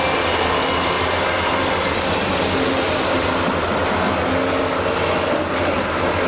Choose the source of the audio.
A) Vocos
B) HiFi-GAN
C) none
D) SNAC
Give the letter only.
C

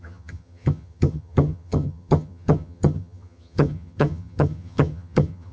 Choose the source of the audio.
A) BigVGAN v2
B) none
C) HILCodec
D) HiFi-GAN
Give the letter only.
D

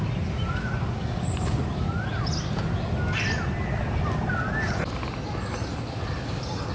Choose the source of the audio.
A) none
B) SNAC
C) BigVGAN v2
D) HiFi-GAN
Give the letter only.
A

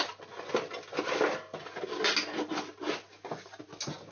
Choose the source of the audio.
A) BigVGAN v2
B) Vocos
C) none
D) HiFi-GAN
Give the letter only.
C